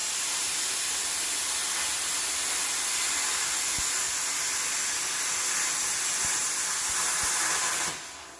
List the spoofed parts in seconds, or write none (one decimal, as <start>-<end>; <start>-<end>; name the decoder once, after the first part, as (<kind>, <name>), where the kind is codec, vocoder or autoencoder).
0.0-4.9 (vocoder, BigVGAN v2)